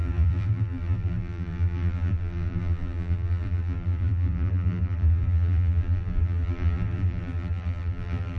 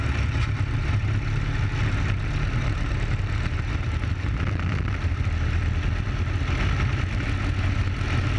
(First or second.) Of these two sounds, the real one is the second